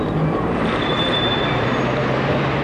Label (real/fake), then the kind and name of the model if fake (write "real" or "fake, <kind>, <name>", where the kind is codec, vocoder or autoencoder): fake, vocoder, BigVGAN v2